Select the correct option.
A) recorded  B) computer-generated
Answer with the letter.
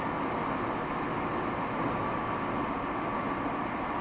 A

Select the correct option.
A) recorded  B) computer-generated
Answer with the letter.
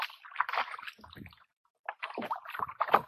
A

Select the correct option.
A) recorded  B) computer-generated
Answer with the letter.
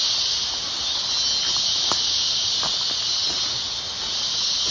A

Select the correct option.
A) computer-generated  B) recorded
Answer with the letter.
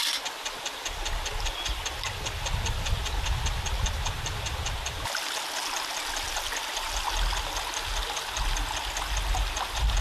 B